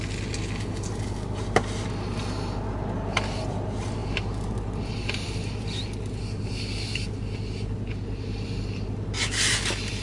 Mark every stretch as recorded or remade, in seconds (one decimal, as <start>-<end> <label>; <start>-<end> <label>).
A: 0.0-4.0 recorded; 4.0-5.8 remade; 5.8-10.0 recorded